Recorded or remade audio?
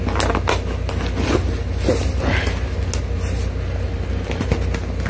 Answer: recorded